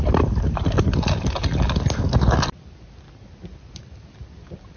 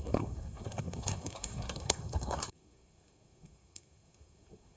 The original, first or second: first